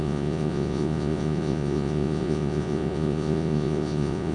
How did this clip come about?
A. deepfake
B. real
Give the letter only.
A